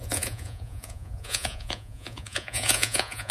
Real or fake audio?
fake